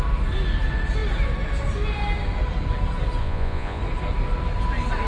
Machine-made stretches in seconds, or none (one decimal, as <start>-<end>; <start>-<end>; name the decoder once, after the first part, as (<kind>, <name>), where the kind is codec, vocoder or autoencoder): 3.2-3.8 (vocoder, Vocos)